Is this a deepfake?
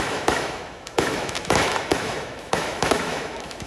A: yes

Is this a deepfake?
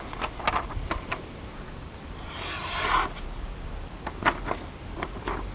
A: no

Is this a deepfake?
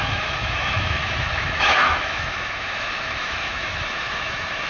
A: yes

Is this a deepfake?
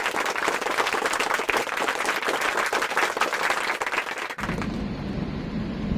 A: no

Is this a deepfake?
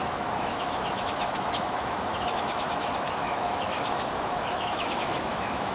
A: yes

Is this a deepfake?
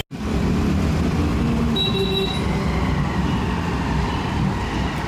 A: no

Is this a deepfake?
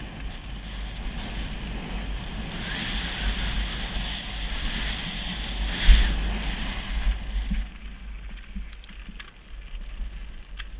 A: no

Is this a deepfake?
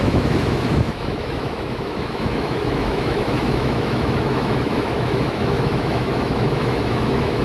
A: yes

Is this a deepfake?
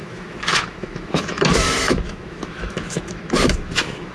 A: yes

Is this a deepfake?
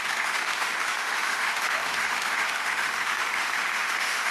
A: yes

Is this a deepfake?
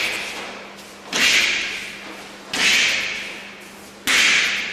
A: no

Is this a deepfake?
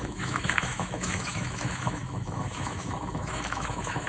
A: yes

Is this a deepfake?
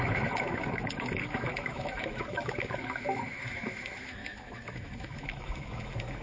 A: yes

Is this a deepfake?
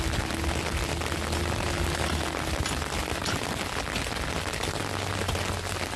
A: no